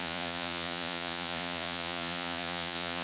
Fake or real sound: fake